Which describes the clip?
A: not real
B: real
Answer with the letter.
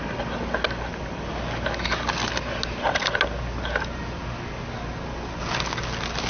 B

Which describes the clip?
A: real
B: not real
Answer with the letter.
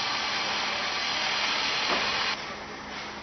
A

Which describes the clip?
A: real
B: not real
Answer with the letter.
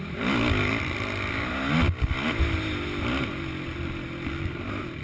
A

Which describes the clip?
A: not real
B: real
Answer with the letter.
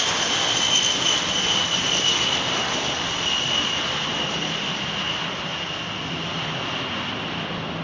B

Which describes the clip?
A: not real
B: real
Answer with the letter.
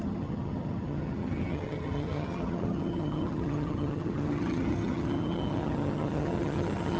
A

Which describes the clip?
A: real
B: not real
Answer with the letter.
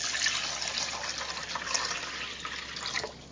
A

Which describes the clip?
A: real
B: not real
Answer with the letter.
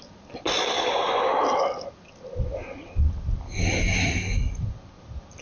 A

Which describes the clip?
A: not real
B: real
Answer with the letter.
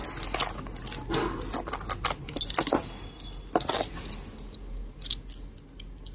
B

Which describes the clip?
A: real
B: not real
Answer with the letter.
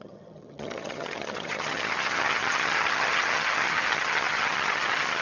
B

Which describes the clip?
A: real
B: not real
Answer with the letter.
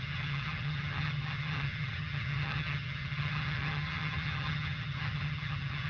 B